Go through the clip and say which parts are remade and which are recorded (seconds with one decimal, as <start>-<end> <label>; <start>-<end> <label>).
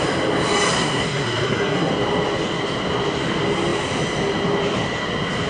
0.0-0.7 recorded; 0.7-1.9 remade; 1.9-5.5 recorded